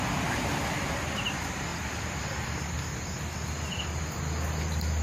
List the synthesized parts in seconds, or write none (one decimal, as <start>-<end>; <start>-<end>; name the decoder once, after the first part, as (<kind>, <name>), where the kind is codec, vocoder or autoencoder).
none